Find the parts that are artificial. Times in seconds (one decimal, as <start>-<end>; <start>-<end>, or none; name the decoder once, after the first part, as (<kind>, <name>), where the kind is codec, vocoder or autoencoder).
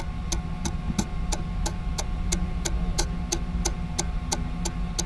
none